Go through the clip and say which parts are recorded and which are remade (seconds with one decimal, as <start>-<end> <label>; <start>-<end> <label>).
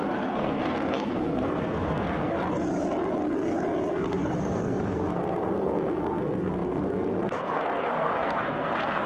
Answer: 0.0-2.4 remade; 2.4-3.9 recorded; 3.9-9.1 remade